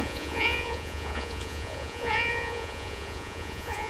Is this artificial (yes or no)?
yes